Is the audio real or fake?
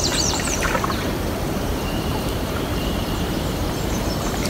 fake